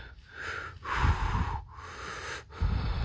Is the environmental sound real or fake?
real